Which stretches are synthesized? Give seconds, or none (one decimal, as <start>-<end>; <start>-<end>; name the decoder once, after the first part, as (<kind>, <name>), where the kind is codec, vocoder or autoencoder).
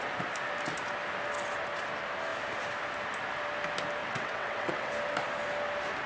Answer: 4.0-4.9 (vocoder, WaveNeXt)